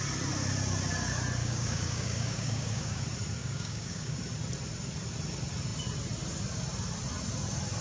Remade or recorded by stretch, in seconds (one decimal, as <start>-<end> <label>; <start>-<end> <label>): 0.0-1.4 recorded; 1.4-3.0 remade; 3.0-3.4 recorded; 3.4-4.2 remade; 4.2-7.8 recorded

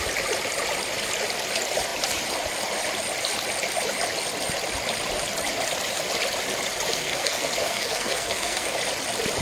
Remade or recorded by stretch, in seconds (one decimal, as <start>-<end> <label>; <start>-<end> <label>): 0.0-6.9 recorded; 6.9-8.8 remade; 8.8-9.4 recorded

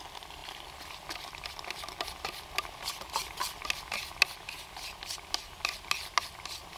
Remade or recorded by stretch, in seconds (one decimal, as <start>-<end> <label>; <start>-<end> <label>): 0.0-6.8 recorded

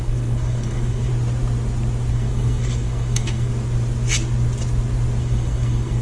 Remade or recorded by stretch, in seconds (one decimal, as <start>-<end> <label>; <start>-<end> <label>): 0.0-1.1 remade; 1.1-2.1 recorded; 2.1-3.5 remade; 3.5-5.2 recorded; 5.2-6.0 remade

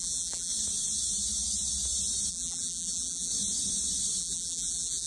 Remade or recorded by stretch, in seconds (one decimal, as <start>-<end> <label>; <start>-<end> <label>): 0.0-0.5 remade; 0.5-2.3 recorded; 2.3-3.3 remade; 3.3-4.2 recorded; 4.2-5.1 remade

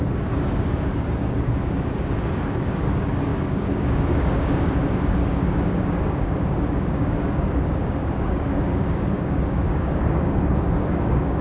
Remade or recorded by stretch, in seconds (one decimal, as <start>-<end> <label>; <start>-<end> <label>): 0.0-11.4 remade

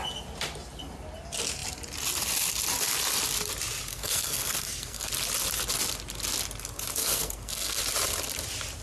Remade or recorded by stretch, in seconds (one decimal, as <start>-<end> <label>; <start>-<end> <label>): 0.0-3.9 recorded; 3.9-5.1 remade; 5.1-7.0 recorded; 7.0-7.8 remade; 7.8-8.8 recorded

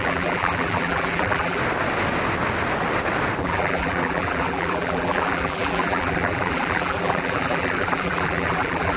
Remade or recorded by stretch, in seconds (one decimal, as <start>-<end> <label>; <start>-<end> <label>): 0.0-1.6 remade; 1.6-3.4 recorded; 3.4-9.0 remade